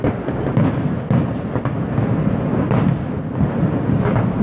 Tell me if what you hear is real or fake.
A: real